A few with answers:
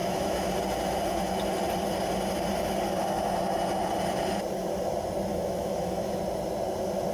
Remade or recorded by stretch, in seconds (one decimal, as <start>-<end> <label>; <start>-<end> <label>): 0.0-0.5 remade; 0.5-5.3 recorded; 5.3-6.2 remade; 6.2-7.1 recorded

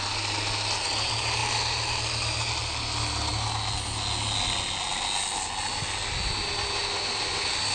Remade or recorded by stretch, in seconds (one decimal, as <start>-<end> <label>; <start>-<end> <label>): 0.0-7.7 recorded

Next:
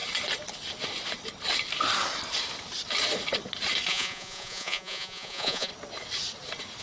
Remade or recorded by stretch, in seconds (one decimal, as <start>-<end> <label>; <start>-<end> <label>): 0.0-3.9 recorded; 3.9-5.7 remade; 5.7-6.8 recorded